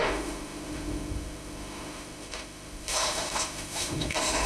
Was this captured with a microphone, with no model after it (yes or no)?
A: no